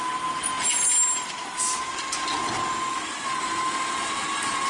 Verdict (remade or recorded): recorded